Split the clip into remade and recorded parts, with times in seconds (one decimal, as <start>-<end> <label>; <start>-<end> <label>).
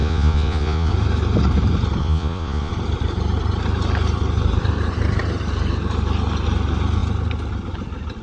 0.0-0.9 remade; 0.9-2.0 recorded; 2.0-2.7 remade; 2.7-8.2 recorded